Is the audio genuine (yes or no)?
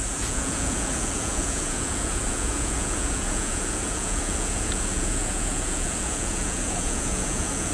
no